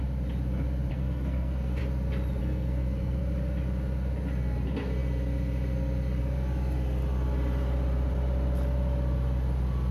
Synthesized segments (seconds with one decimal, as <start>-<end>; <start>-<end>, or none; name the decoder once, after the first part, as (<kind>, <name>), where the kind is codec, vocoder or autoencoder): 0.9-1.8 (codec, SNAC); 2.4-3.2